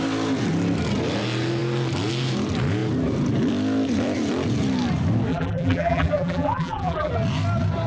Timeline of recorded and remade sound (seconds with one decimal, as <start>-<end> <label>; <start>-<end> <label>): 0.0-5.3 recorded; 5.3-7.1 remade; 7.1-7.9 recorded